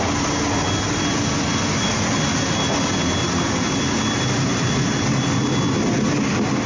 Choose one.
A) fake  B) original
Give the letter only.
B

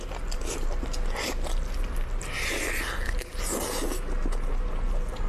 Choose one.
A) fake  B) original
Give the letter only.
B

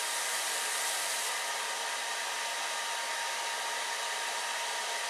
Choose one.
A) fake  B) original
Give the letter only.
B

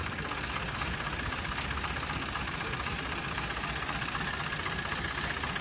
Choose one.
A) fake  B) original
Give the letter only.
B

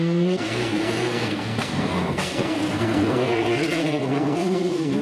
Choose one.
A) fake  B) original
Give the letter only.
A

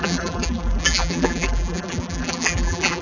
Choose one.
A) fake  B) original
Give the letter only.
A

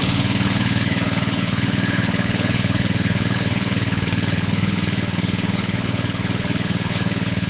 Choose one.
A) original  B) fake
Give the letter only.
B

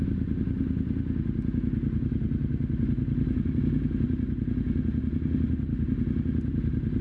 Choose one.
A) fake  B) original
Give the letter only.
B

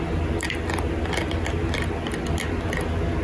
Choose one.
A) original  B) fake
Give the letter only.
A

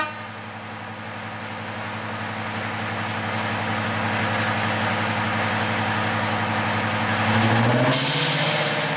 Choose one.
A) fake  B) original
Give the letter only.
B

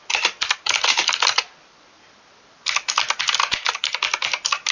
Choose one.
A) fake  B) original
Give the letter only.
B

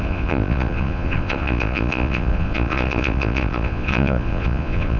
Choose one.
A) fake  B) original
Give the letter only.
A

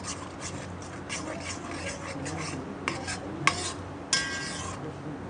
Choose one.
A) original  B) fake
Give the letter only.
A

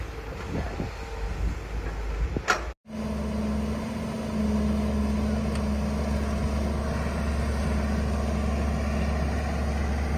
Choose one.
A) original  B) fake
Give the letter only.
A